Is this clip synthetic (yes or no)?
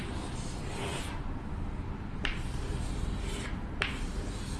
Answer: yes